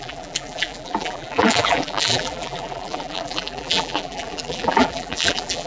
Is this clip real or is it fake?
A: fake